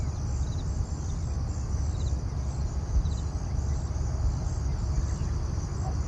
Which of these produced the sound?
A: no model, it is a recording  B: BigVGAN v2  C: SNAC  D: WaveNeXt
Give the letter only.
A